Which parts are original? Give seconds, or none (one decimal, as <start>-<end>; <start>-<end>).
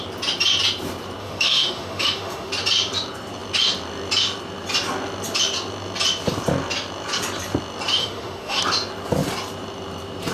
0.0-1.2; 2.5-8.0; 8.6-10.3